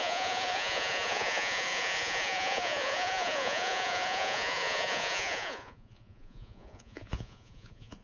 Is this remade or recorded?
remade